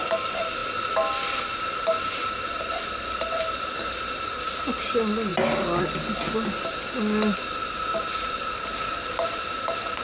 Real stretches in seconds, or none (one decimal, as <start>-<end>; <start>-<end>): 0.0-10.0